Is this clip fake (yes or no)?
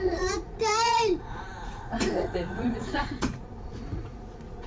yes